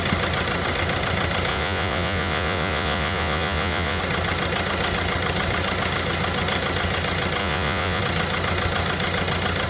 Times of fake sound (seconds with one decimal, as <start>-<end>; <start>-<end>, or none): 1.5-4.0; 7.4-8.0